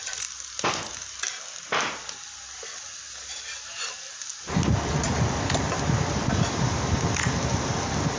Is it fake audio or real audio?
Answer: real